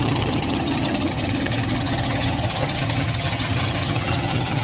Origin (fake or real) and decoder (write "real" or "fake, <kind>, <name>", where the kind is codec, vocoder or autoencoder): fake, vocoder, HiFi-GAN